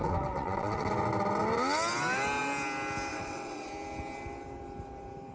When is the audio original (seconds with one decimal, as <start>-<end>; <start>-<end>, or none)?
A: 0.9-3.1; 3.7-5.3